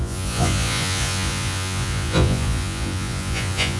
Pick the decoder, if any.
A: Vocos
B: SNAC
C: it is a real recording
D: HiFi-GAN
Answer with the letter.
A